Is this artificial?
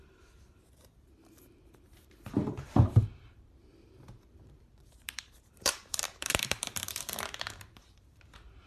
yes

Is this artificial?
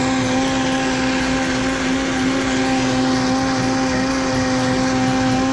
no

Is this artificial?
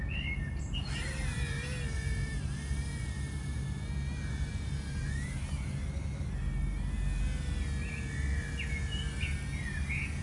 no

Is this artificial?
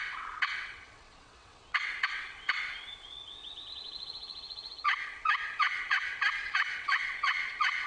yes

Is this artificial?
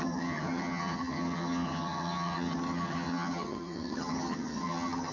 yes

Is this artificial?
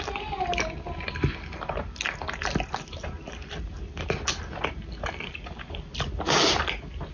no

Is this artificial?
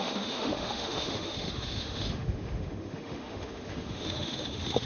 yes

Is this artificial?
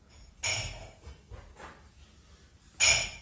no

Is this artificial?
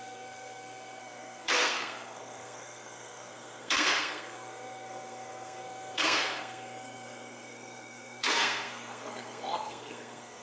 yes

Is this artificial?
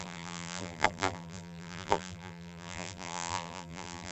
yes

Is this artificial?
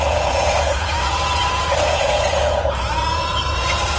yes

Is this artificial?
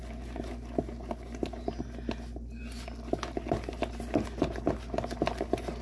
no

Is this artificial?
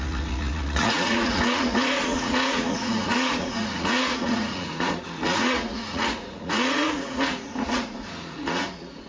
yes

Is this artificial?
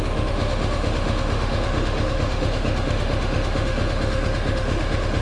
yes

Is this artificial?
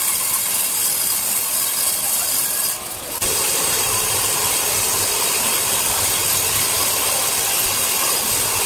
no